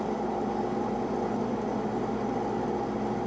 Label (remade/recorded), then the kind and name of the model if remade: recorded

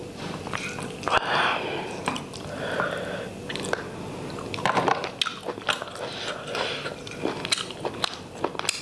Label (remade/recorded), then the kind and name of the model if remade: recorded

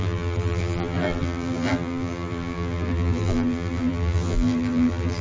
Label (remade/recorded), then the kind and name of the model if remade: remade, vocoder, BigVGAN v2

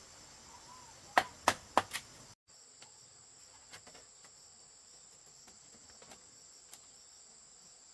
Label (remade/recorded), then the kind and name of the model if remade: recorded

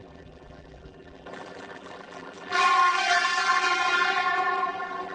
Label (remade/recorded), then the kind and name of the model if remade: remade, vocoder, BigVGAN v2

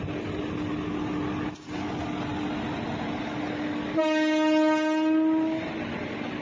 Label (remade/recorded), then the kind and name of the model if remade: recorded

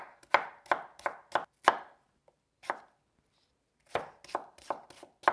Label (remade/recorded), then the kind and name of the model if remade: recorded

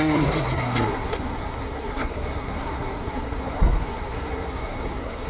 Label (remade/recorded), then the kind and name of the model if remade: remade, codec, SNAC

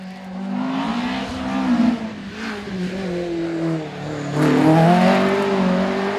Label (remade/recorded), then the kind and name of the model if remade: recorded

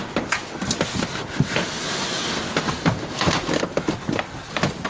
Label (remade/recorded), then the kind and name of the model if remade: recorded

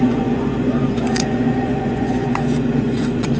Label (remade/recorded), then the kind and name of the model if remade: remade, vocoder, Vocos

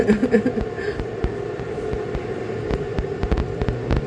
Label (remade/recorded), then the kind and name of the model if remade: recorded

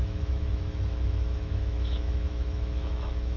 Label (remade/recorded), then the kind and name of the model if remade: remade, autoencoder, DAC-VAE